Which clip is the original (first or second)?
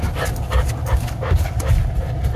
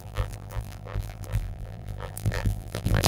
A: first